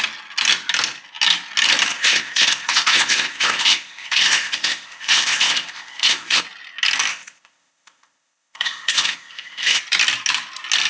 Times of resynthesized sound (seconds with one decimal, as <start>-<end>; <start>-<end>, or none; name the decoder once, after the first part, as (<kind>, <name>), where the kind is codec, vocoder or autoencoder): 1.9-6.4 (codec, ZipCodec); 7.1-9.8